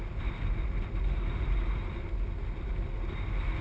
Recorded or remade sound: recorded